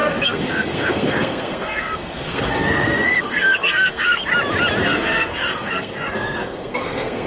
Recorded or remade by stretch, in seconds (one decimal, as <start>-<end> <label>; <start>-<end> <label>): 0.0-4.2 remade; 4.2-4.8 recorded; 4.8-7.3 remade